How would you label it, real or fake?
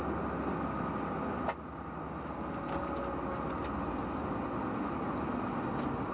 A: real